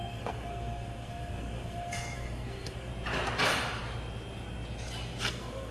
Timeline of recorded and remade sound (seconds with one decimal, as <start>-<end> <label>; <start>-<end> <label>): 0.0-2.9 remade; 2.9-5.2 recorded; 5.2-5.7 remade